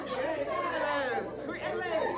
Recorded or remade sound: recorded